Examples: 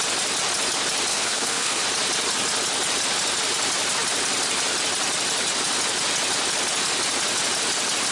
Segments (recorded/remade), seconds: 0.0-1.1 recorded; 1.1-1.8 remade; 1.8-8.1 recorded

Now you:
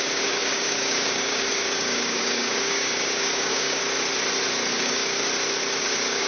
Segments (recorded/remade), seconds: 0.0-3.8 remade; 3.8-4.7 recorded; 4.7-5.2 remade; 5.2-5.8 recorded; 5.8-6.3 remade

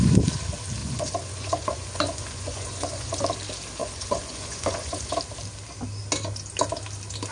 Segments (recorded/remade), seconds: 0.0-0.8 recorded; 0.8-3.2 remade; 3.2-3.8 recorded; 3.8-5.2 remade; 5.2-7.3 recorded

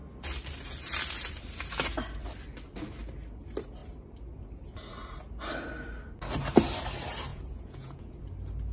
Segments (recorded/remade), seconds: 0.0-7.3 recorded; 7.3-8.2 remade; 8.2-8.7 recorded

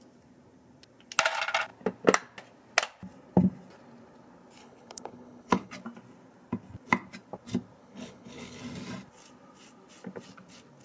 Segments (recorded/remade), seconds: 0.0-4.6 recorded; 4.6-5.7 remade; 5.7-7.8 recorded; 7.8-8.6 remade; 8.6-10.8 recorded